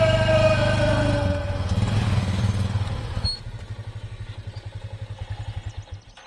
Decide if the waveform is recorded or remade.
recorded